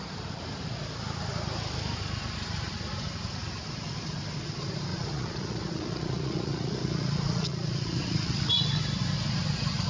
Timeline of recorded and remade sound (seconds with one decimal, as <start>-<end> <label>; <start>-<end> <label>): 0.0-4.9 recorded; 4.9-8.6 remade; 8.6-9.9 recorded